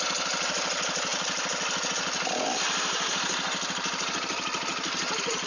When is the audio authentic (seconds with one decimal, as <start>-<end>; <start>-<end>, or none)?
0.0-1.1; 1.8-5.5